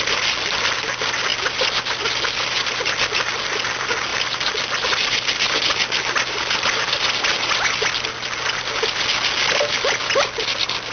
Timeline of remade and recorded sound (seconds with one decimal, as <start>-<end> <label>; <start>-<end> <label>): 0.0-4.1 recorded; 4.1-6.4 remade; 6.4-10.9 recorded